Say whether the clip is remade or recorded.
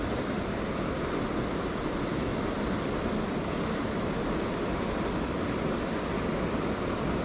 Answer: recorded